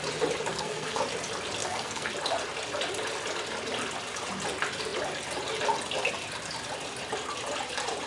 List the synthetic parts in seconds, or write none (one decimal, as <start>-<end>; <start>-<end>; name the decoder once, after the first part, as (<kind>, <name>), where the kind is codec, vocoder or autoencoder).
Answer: 0.5-1.0 (codec, SNAC); 1.6-2.1